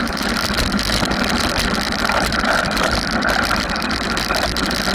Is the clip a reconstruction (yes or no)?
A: yes